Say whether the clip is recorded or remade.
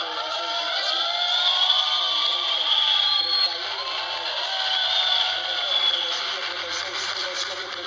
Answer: recorded